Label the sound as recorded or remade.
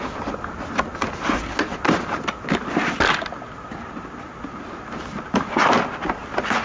recorded